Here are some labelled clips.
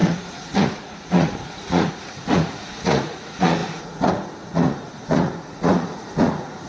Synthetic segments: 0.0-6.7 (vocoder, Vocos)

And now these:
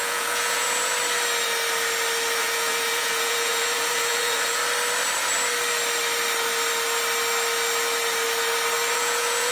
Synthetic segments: 0.0-0.9 (vocoder, Vocos); 2.4-4.6; 8.9-9.5

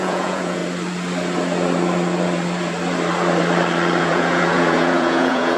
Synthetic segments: 0.0-0.6 (vocoder, Vocos); 4.0-5.6

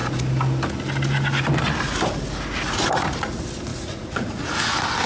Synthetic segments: 3.7-4.5 (vocoder, Vocos)

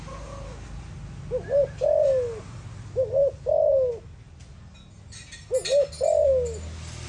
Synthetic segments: none

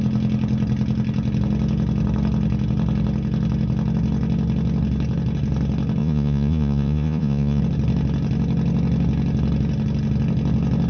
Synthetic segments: 6.0-7.6 (vocoder, Vocos)

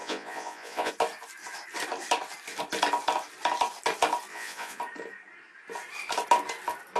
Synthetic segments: 0.0-0.9 (vocoder, Vocos); 4.3-4.8